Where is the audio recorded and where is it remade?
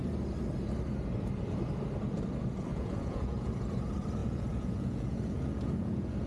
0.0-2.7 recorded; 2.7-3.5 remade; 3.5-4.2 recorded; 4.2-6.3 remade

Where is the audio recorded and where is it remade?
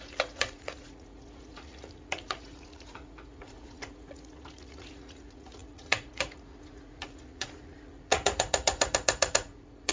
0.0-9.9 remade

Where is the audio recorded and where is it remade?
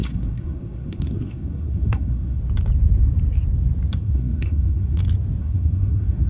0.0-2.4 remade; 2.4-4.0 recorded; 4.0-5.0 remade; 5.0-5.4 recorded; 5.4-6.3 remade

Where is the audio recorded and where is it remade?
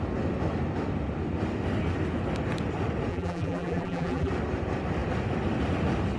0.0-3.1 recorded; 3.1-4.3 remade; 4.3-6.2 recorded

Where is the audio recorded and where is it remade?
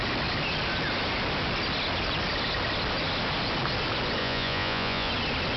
0.0-4.2 recorded; 4.2-5.1 remade; 5.1-5.6 recorded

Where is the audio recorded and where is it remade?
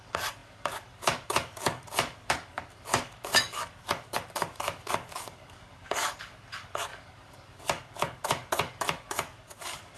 0.0-10.0 remade